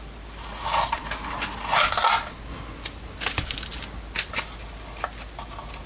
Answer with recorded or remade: recorded